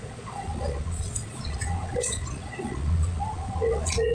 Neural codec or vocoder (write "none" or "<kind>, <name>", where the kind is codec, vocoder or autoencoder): vocoder, Vocos